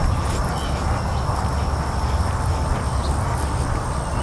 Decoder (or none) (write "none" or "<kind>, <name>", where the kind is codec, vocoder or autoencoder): none